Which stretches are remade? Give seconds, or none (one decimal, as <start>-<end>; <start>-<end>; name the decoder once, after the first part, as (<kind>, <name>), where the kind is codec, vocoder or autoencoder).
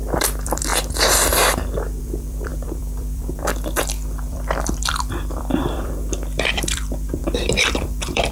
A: 0.0-0.7 (vocoder, BigVGAN v2); 2.0-8.3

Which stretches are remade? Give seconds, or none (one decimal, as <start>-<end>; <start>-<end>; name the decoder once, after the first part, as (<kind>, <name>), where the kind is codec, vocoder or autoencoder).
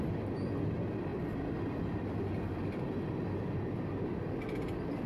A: none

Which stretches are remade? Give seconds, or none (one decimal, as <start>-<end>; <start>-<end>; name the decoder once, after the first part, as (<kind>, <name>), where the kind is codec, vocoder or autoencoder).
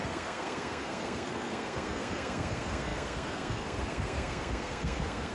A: 0.0-5.3 (codec, SNAC)